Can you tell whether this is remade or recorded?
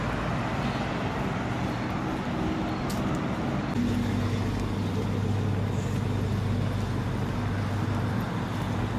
recorded